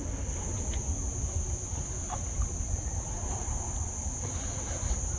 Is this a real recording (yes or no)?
yes